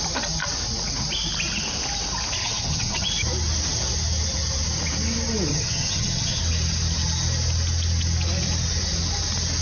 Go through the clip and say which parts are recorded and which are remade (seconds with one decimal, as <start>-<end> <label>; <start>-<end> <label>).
0.0-2.4 recorded; 2.4-3.1 remade; 3.1-5.5 recorded; 5.5-6.4 remade; 6.4-9.6 recorded

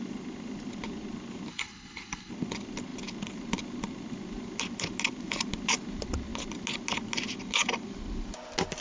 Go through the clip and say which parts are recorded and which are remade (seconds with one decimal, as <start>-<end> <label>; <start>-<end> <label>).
0.0-1.5 recorded; 1.5-2.3 remade; 2.3-8.8 recorded

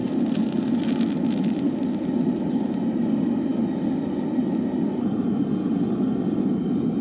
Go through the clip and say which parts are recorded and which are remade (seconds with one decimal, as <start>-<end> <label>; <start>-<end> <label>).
0.0-7.0 recorded